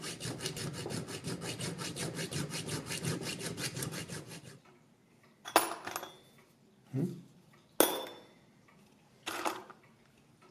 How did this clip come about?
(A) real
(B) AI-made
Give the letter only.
A